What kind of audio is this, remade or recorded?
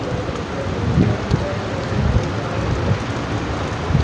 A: recorded